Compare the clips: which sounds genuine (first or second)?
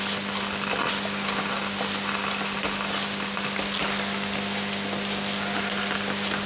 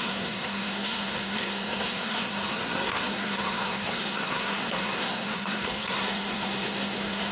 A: first